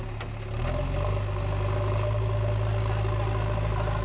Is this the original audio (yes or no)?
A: yes